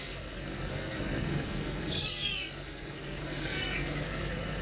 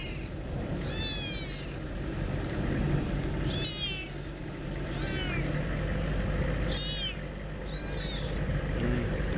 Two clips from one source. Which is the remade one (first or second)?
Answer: first